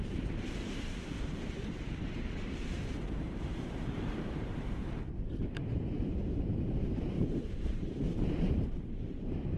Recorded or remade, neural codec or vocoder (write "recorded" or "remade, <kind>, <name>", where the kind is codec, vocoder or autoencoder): remade, vocoder, BigVGAN v2